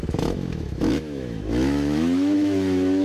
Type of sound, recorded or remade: remade